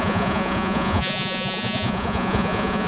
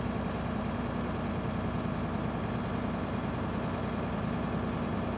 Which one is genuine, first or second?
second